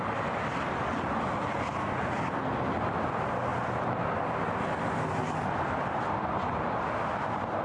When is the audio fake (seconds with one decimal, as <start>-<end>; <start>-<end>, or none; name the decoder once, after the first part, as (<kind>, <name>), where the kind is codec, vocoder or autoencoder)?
none